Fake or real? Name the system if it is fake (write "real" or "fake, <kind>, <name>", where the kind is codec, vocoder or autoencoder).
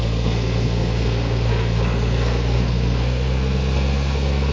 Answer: fake, codec, SNAC